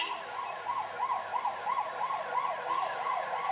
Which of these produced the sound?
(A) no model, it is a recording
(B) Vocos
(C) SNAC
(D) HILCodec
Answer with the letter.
A